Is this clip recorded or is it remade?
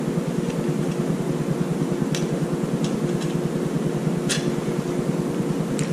recorded